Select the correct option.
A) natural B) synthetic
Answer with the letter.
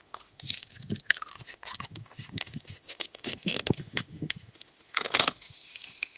B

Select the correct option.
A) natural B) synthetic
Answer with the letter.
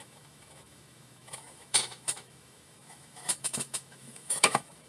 B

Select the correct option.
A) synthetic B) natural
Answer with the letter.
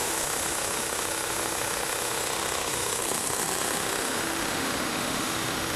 A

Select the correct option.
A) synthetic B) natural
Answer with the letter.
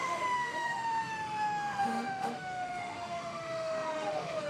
A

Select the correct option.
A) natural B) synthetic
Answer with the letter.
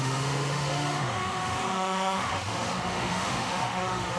B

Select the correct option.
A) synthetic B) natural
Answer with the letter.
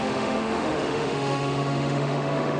A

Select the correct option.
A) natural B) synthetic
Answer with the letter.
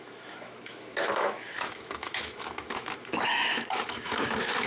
B